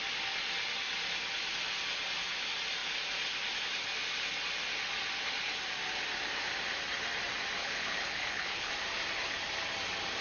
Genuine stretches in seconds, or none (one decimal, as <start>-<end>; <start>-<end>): 0.0-7.6; 8.7-10.2